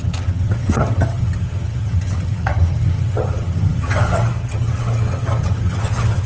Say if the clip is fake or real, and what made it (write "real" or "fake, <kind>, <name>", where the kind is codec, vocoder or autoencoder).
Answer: fake, vocoder, HiFi-GAN